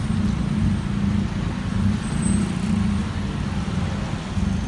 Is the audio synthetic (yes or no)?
no